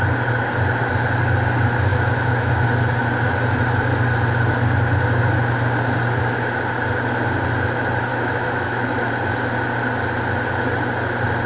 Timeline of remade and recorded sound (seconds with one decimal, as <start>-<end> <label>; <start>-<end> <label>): 0.0-1.9 recorded; 1.9-2.5 remade; 2.5-8.1 recorded; 8.1-9.1 remade; 9.1-11.5 recorded